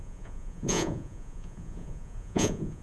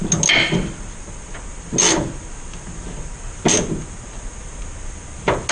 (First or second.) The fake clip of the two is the first